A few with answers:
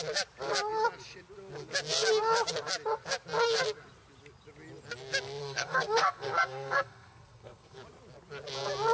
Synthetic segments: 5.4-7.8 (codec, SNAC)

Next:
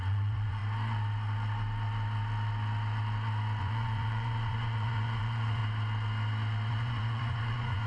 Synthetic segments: 0.0-0.6 (vocoder, Vocos); 3.6-5.6; 6.7-7.9

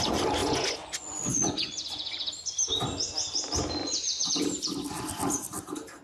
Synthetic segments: 0.4-2.3 (vocoder, Vocos); 3.8-4.3

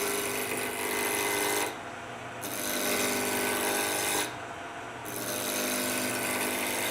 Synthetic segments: none

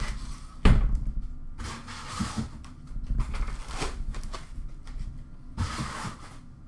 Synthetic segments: none

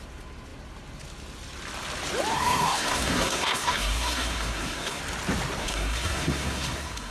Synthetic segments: 2.3-5.0 (codec, SNAC); 5.6-7.1